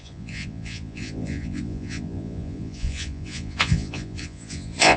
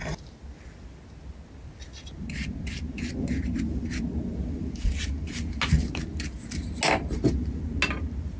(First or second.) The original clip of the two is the second